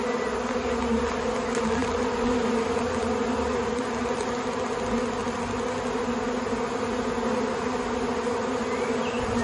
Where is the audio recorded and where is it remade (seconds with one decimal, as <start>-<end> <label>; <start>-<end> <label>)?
0.0-9.4 recorded